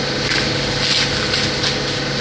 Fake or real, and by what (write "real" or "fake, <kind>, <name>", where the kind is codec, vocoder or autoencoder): real